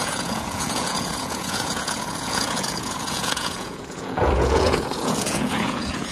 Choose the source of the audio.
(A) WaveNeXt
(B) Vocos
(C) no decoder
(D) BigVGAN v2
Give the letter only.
B